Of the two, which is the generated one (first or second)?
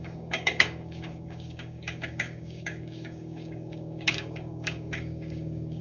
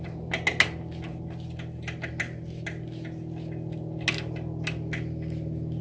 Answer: first